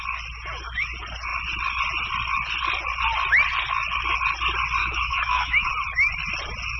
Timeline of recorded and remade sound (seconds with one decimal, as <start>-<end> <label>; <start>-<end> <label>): 0.0-4.8 recorded; 4.8-5.7 remade; 5.7-6.8 recorded